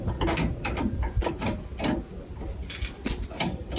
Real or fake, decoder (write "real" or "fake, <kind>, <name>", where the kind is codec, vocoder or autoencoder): real